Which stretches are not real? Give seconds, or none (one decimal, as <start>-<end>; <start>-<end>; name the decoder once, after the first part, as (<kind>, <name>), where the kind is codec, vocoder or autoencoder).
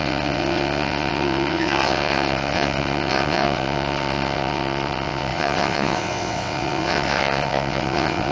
0.0-8.3 (vocoder, WaveNeXt)